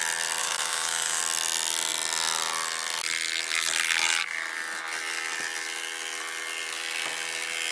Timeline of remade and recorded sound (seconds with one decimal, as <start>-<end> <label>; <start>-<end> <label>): 0.0-0.4 recorded; 0.4-1.2 remade; 1.2-7.7 recorded